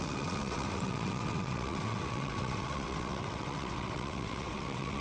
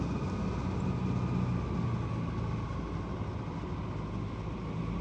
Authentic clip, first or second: second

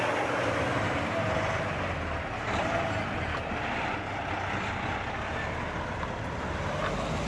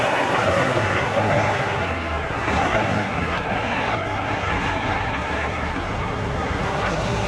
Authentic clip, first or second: first